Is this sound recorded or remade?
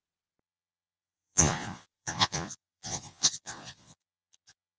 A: remade